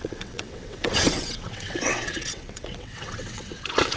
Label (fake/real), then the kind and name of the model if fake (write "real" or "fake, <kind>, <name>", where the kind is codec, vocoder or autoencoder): fake, vocoder, WaveNeXt